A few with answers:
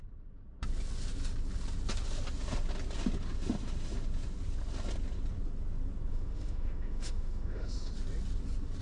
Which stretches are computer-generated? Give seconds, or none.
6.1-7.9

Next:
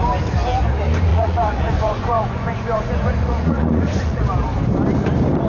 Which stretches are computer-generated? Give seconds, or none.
1.1-4.2

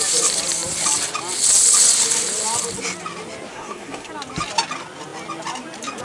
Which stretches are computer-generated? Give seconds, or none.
3.5-4.1